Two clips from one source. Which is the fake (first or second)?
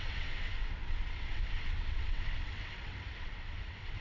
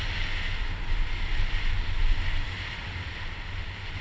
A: first